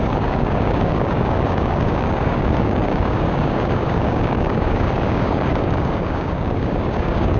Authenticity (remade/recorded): remade